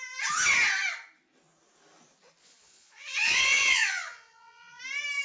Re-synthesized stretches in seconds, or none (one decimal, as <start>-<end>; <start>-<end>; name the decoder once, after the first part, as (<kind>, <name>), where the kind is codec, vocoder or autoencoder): 2.4-4.8 (vocoder, Vocos)